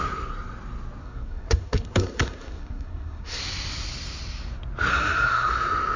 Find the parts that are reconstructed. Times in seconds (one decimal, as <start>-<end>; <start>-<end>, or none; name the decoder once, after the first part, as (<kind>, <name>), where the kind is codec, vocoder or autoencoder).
1.0-3.4 (codec, SNAC); 4.9-5.5